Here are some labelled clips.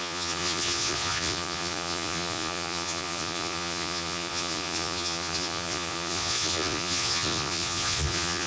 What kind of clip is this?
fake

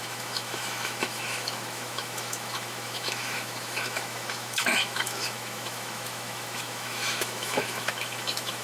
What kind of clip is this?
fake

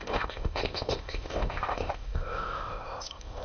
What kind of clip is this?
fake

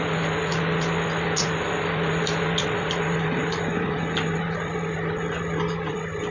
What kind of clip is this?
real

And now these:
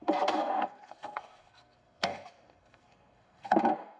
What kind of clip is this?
fake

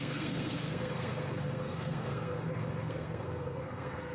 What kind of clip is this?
fake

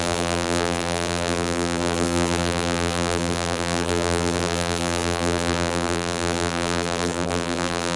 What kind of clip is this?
fake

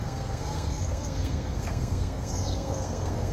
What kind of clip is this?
fake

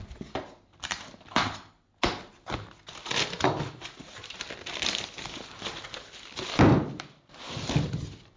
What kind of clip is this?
real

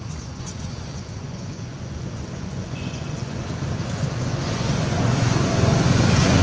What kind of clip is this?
fake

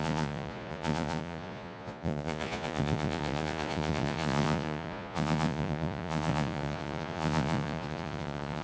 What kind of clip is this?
fake